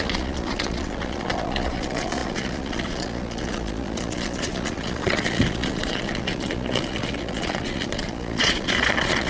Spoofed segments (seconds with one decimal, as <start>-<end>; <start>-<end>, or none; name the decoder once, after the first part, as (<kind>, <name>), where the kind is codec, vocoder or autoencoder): 0.0-9.3 (vocoder, Vocos)